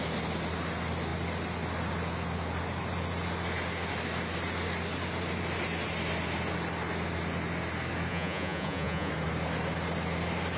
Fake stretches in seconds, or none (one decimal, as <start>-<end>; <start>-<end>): 8.1-9.1